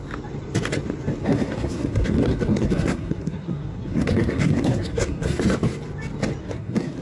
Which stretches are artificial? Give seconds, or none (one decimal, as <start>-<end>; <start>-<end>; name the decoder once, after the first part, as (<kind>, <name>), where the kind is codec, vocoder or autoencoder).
1.2-5.4 (codec, SNAC); 6.4-7.0